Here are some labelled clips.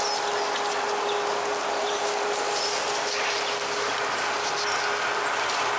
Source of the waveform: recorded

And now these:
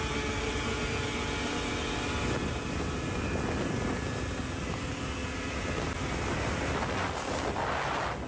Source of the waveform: recorded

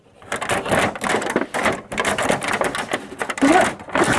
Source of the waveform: recorded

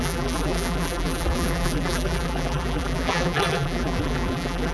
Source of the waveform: remade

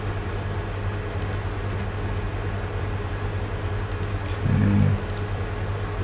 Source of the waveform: recorded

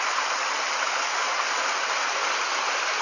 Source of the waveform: recorded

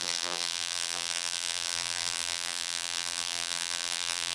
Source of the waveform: remade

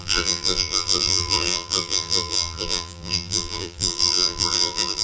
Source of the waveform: remade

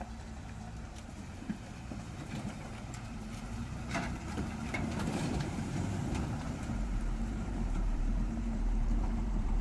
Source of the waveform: remade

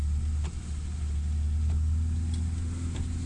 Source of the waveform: recorded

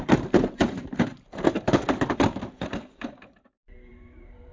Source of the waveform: remade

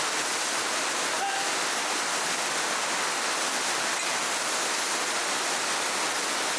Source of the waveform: recorded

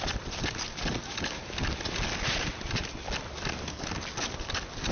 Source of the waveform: recorded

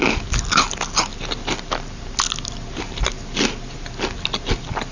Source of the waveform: recorded